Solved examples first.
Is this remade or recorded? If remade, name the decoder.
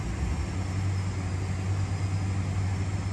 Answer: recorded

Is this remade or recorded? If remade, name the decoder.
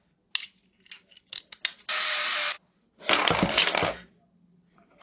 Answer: recorded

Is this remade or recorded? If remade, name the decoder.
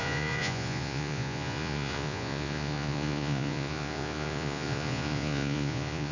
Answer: remade, vocoder, Vocos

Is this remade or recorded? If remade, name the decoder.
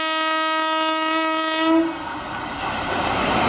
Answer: recorded